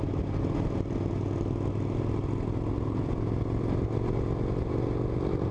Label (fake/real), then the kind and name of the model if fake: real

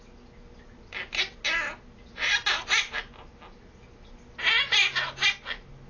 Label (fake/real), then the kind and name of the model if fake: real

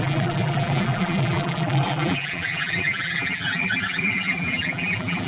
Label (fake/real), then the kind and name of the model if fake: fake, vocoder, BigVGAN v2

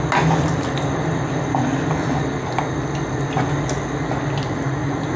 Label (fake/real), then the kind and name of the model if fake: real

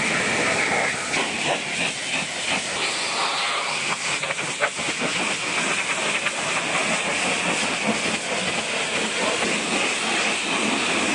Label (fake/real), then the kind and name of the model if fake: real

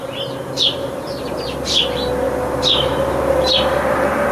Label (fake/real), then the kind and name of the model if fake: real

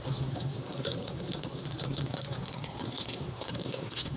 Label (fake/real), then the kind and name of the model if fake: fake, codec, SNAC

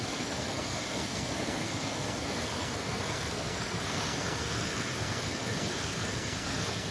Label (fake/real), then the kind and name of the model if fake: fake, codec, SNAC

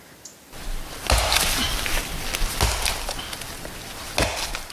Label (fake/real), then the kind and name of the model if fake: real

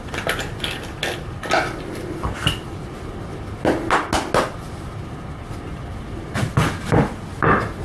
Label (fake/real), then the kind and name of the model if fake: real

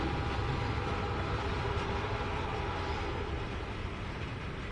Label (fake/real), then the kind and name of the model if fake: real